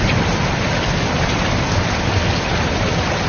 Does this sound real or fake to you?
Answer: real